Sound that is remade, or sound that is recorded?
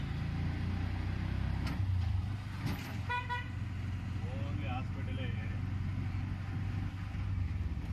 recorded